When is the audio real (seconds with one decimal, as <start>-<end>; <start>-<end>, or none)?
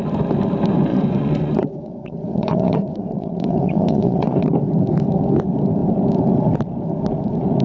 0.0-0.9; 4.4-7.6